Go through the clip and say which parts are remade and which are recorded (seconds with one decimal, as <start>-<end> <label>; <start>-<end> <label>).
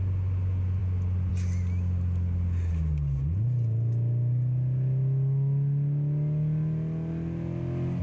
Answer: 0.0-8.0 recorded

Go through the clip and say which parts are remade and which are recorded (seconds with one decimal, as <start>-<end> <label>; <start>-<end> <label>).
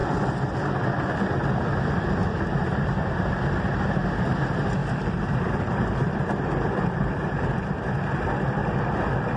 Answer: 0.0-2.2 recorded; 2.2-3.2 remade; 3.2-4.8 recorded; 4.8-7.9 remade; 7.9-9.4 recorded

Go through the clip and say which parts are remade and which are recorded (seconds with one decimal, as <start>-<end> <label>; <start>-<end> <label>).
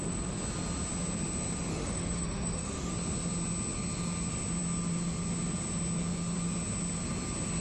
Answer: 0.0-1.7 recorded; 1.7-2.9 remade; 2.9-7.6 recorded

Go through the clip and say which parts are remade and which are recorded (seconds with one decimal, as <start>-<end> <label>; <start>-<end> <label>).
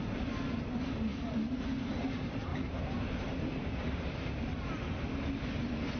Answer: 0.0-2.5 recorded; 2.5-4.7 remade; 4.7-6.0 recorded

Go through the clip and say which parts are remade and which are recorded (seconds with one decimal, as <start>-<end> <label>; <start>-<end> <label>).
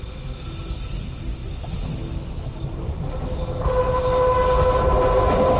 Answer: 0.0-5.6 recorded